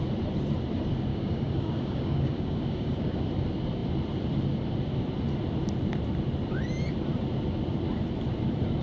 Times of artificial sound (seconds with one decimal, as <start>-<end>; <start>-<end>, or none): 1.1-3.2